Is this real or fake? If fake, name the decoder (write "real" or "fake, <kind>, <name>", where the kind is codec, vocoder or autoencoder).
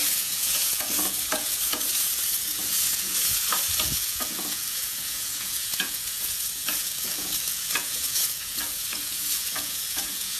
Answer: fake, vocoder, Vocos